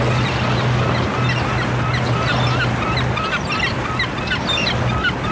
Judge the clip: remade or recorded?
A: recorded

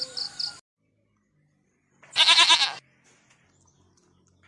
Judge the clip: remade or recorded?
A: recorded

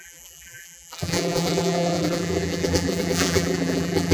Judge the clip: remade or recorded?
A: remade